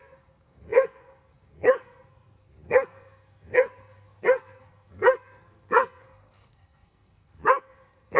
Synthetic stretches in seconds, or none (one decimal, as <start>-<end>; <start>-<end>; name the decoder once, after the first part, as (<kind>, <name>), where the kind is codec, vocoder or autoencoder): 0.0-8.2 (codec, SNAC)